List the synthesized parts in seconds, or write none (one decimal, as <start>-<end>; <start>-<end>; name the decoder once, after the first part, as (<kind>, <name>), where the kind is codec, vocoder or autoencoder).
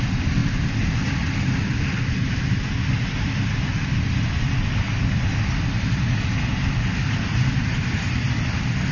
none